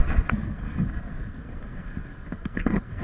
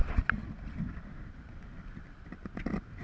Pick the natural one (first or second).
second